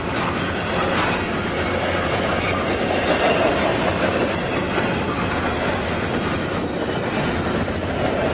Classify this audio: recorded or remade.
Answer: recorded